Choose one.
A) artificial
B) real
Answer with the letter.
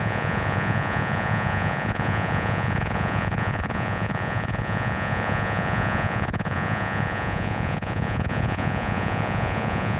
A